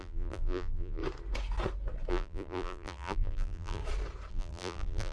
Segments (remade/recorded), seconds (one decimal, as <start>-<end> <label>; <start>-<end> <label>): 0.0-1.0 remade; 1.0-2.1 recorded; 2.1-3.8 remade; 3.8-4.3 recorded; 4.3-5.1 remade